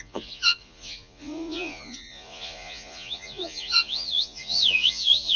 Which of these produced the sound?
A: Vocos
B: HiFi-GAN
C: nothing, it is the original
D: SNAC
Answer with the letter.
A